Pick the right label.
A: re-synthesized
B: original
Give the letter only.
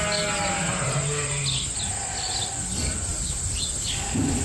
B